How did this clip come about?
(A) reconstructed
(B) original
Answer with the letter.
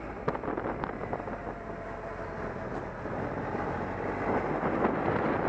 B